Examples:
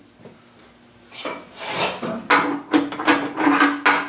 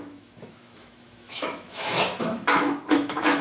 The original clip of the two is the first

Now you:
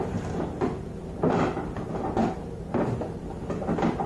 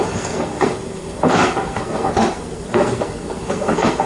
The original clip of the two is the first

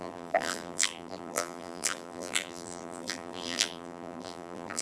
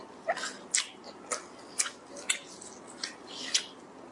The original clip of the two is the second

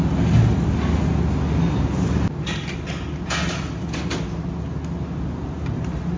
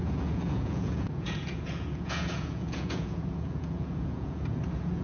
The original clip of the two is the first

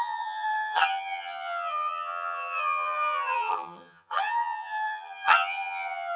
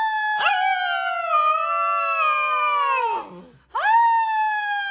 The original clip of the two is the second